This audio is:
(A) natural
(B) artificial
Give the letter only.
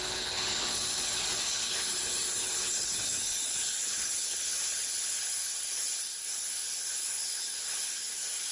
B